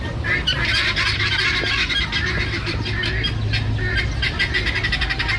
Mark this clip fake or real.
real